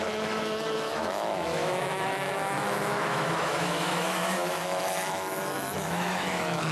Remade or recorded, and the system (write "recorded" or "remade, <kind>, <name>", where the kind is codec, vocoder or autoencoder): remade, autoencoder, DAC-VAE